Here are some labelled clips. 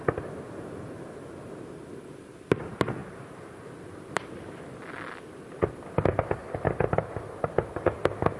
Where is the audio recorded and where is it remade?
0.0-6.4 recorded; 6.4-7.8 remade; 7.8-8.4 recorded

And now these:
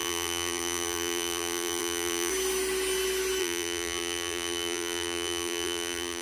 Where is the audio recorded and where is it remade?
0.0-2.3 remade; 2.3-3.4 recorded; 3.4-6.2 remade

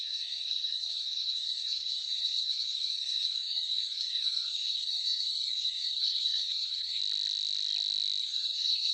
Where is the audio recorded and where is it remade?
0.0-7.0 remade; 7.0-8.2 recorded; 8.2-8.9 remade

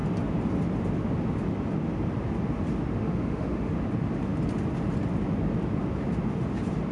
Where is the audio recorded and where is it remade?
0.0-3.0 recorded; 3.0-3.7 remade; 3.7-6.9 recorded

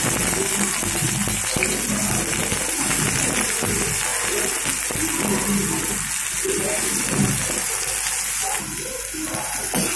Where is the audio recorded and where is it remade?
0.0-10.0 recorded